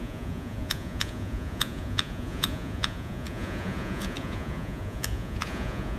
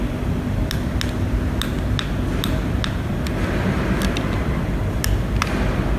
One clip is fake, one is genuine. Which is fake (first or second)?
first